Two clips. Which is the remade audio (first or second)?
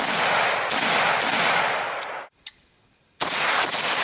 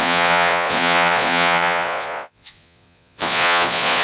second